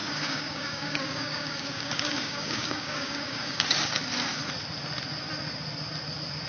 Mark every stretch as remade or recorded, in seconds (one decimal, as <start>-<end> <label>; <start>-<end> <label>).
0.0-3.9 remade; 3.9-6.5 recorded